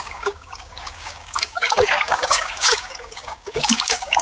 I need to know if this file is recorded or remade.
remade